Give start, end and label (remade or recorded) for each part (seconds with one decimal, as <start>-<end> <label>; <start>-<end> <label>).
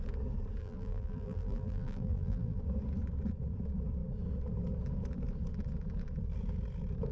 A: 0.0-0.6 recorded; 0.6-2.6 remade; 2.6-7.1 recorded